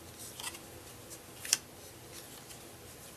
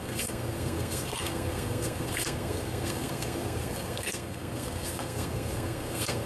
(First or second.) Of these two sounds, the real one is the first